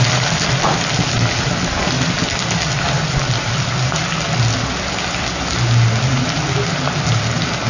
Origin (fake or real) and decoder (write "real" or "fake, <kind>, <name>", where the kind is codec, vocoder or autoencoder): real